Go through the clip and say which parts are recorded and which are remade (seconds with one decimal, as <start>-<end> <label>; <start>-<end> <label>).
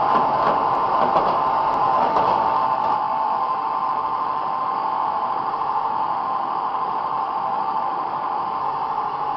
0.0-1.9 recorded; 1.9-5.5 remade; 5.5-5.9 recorded; 5.9-8.6 remade; 8.6-9.4 recorded